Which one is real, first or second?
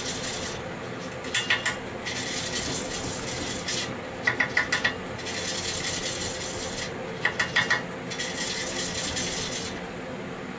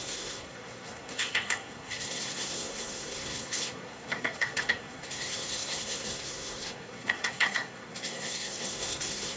first